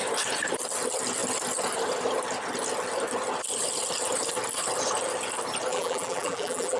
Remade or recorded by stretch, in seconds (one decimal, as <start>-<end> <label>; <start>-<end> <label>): 0.0-5.7 recorded; 5.7-6.8 remade